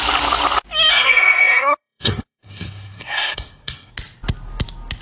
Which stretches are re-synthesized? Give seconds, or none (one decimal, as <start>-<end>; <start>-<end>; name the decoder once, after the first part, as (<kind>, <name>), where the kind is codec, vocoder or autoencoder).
0.9-3.9 (codec, SNAC)